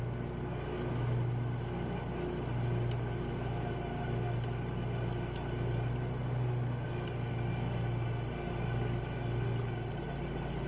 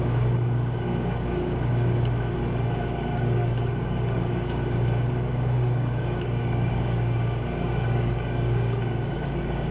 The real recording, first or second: first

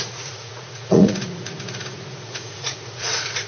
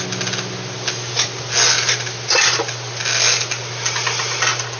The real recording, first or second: second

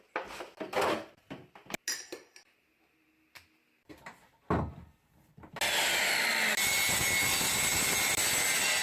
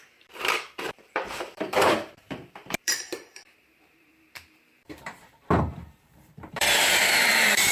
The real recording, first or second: first